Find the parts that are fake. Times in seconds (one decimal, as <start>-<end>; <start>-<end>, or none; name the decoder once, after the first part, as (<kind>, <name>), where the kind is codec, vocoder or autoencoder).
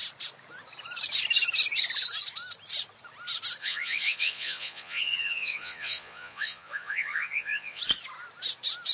3.6-7.8 (vocoder, Vocos)